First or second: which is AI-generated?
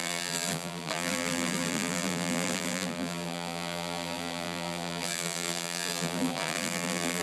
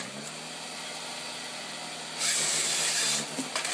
first